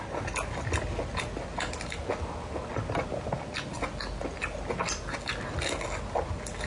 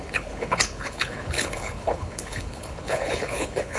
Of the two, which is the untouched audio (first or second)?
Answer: first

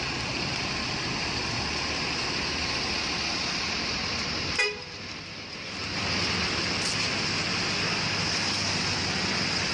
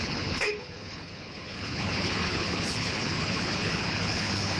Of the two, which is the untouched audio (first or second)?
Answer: first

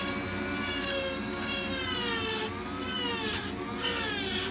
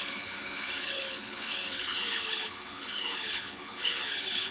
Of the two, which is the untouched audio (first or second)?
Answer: first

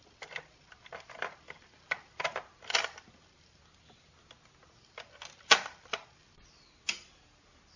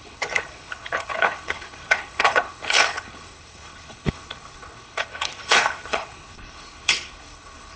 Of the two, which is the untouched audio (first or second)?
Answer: first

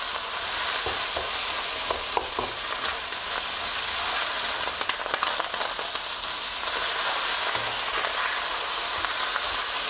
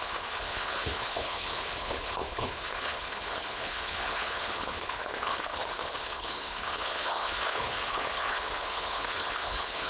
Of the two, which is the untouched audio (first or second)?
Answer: first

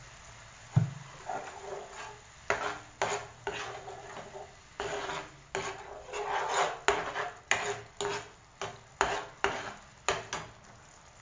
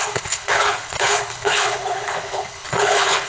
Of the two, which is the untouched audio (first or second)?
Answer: first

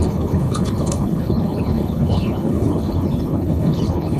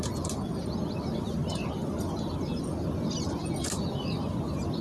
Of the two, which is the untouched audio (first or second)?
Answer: second